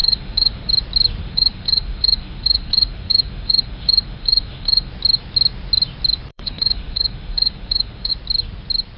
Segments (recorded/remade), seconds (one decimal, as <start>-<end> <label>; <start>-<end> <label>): 0.0-0.7 remade; 0.7-1.2 recorded; 1.2-4.9 remade; 4.9-6.3 recorded; 6.3-8.1 remade; 8.1-9.0 recorded